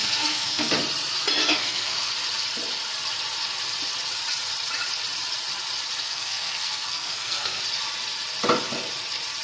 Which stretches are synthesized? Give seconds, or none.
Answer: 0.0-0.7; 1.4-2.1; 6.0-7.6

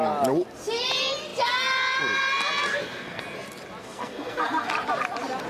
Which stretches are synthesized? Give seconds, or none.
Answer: 2.7-3.2; 3.8-4.7

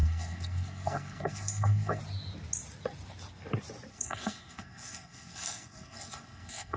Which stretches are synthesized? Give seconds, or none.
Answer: 0.0-2.0; 3.9-6.8